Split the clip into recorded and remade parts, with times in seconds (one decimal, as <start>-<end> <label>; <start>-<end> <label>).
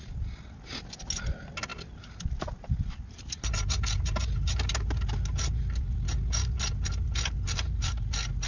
0.0-8.5 recorded